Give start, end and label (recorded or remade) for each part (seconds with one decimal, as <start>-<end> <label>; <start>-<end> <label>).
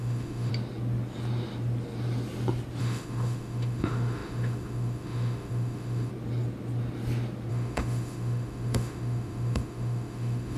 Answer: 0.0-0.5 remade; 0.5-2.8 recorded; 2.8-6.1 remade; 6.1-7.5 recorded; 7.5-10.6 remade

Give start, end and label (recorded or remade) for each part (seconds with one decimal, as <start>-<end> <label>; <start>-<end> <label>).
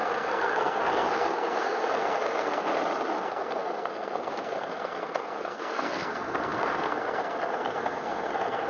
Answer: 0.0-2.7 remade; 2.7-3.2 recorded; 3.2-8.7 remade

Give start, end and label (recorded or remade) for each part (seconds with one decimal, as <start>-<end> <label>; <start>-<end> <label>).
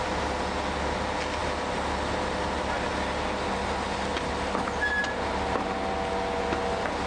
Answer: 0.0-7.1 recorded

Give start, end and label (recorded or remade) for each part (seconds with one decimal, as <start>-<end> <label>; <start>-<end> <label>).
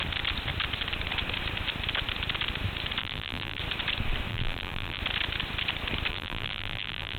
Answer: 0.0-3.0 recorded; 3.0-3.6 remade; 3.6-4.3 recorded; 4.3-5.0 remade; 5.0-6.1 recorded; 6.1-7.2 remade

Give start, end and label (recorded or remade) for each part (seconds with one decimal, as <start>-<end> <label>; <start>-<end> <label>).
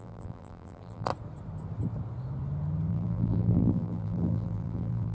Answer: 0.0-1.1 remade; 1.1-2.9 recorded; 2.9-5.1 remade